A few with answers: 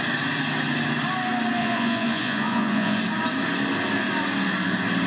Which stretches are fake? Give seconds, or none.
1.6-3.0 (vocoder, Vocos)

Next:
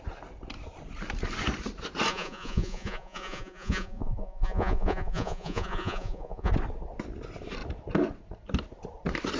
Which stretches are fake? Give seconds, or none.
2.1-6.5 (vocoder, Vocos)